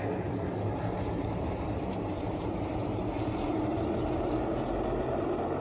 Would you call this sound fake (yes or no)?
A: yes